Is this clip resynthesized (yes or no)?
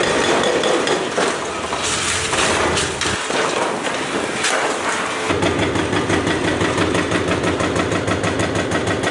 no